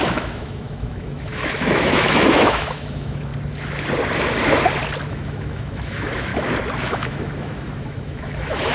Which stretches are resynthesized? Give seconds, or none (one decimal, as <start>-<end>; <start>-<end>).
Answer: 0.0-3.3; 5.1-6.3; 6.8-8.7